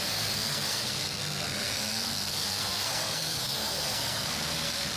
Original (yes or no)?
no